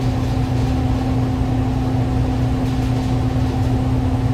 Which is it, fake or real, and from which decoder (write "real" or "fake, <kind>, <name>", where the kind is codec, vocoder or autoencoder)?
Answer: real